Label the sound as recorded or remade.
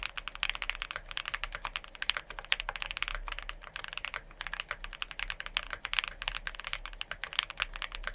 recorded